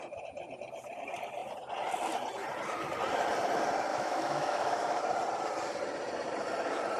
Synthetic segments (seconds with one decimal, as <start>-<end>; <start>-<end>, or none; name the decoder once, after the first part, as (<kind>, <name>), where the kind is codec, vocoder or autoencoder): 3.9-5.0 (autoencoder, DAC-VAE)